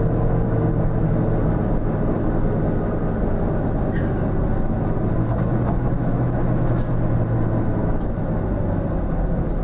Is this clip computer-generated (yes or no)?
no